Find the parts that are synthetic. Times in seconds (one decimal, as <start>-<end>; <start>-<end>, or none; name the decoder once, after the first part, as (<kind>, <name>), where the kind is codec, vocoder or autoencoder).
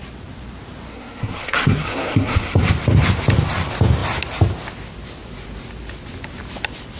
0.9-2.6 (codec, SNAC)